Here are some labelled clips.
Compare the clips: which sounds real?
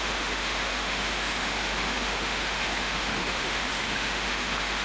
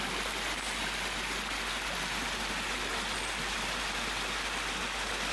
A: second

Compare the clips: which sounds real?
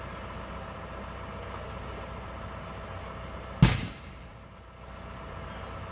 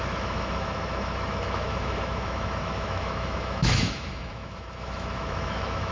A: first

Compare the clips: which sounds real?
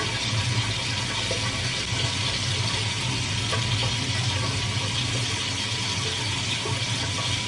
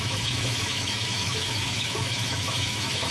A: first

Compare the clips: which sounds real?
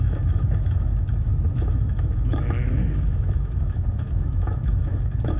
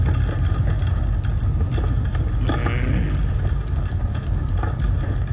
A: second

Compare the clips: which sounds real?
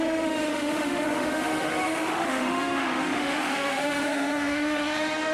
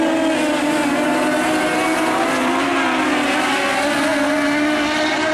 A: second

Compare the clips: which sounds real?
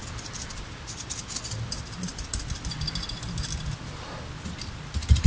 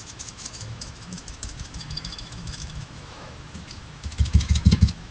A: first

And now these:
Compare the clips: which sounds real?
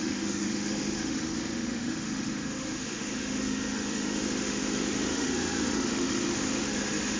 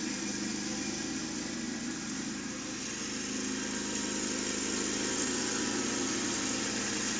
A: second